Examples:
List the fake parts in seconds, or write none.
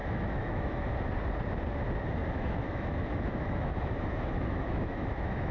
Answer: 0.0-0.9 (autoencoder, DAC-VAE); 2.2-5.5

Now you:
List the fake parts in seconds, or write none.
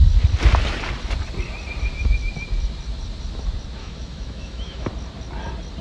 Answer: 3.8-4.9 (autoencoder, DAC-VAE)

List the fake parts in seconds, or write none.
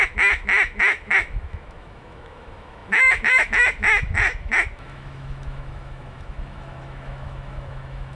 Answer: 0.0-8.2 (autoencoder, DAC-VAE)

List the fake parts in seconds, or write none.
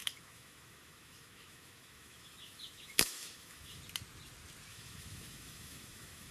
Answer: 0.0-3.8 (autoencoder, DAC-VAE); 4.7-6.3